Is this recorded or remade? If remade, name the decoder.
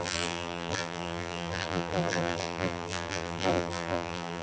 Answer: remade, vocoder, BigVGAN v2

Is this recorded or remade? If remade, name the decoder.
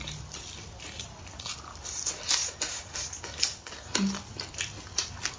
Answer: recorded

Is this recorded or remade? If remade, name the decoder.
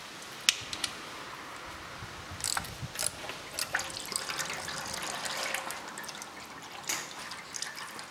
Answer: recorded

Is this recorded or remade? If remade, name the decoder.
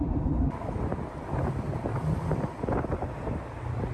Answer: remade, vocoder, BigVGAN v2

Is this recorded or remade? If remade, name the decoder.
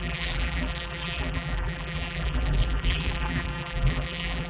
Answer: remade, vocoder, BigVGAN v2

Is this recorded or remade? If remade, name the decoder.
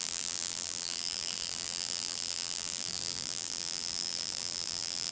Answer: remade, vocoder, BigVGAN v2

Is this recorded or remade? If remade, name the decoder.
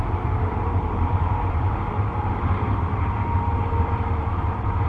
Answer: remade, vocoder, BigVGAN v2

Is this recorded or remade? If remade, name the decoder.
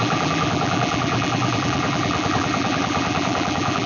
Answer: remade, vocoder, BigVGAN v2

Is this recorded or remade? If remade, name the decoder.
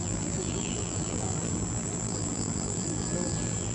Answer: remade, vocoder, BigVGAN v2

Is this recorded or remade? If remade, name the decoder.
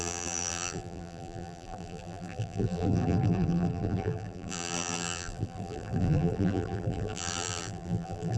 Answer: remade, vocoder, BigVGAN v2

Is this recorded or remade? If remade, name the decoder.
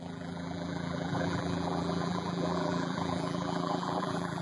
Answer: remade, vocoder, BigVGAN v2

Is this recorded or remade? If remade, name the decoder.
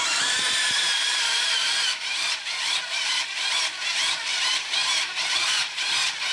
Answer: remade, vocoder, BigVGAN v2